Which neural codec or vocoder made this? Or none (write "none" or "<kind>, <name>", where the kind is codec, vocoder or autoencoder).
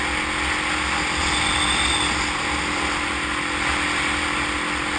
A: none